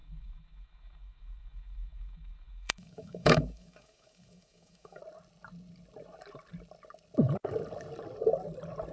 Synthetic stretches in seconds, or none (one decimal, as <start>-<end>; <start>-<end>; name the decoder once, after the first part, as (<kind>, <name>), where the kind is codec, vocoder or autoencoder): 0.0-5.0 (autoencoder, DAC-VAE)